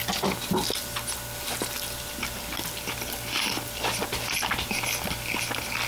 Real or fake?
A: real